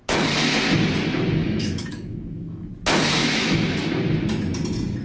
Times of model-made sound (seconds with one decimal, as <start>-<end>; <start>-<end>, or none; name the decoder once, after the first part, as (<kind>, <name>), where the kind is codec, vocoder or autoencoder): 1.4-2.7 (autoencoder, DAC-VAE); 3.2-3.9